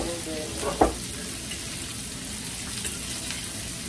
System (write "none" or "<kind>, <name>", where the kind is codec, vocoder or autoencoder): none